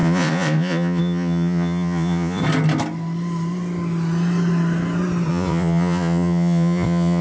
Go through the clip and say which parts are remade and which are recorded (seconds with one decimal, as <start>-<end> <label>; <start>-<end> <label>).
0.0-2.4 remade; 2.4-5.3 recorded; 5.3-7.2 remade